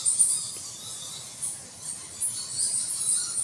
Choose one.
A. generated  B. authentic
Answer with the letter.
B